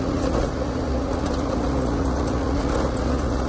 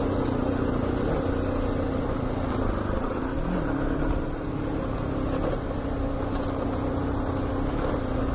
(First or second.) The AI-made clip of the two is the first